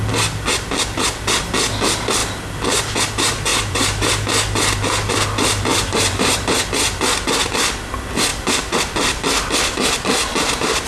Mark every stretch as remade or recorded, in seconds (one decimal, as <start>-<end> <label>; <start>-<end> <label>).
0.0-3.5 recorded; 3.5-4.1 remade; 4.1-5.7 recorded; 5.7-6.6 remade; 6.6-10.9 recorded